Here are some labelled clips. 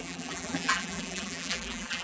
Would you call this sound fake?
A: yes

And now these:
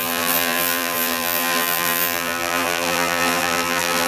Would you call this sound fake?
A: yes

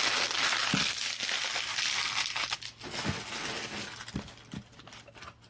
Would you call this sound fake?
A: no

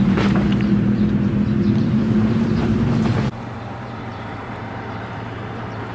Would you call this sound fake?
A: yes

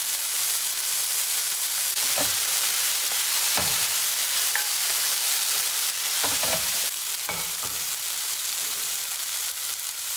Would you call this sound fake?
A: yes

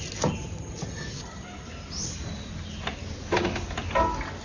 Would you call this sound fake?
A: no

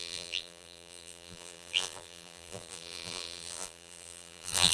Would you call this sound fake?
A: yes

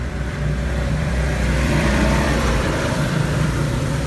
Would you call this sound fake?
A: yes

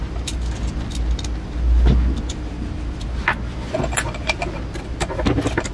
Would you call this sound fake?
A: yes